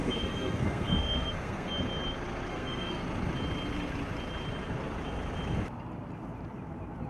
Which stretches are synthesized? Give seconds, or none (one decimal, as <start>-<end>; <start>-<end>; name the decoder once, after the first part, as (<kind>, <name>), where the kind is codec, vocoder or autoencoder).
0.0-1.8 (codec, SNAC); 2.5-3.0